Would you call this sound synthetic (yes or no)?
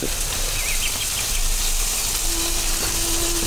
no